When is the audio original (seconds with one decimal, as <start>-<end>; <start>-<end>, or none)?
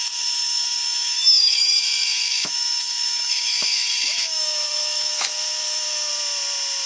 6.1-6.9